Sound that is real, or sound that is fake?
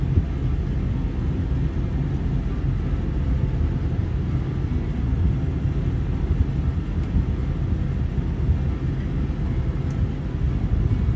real